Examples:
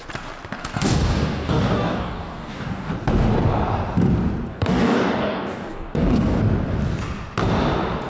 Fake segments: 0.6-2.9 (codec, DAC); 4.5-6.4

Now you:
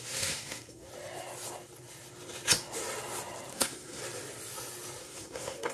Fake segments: 0.0-0.9 (codec, SNAC); 3.5-4.0; 5.0-5.7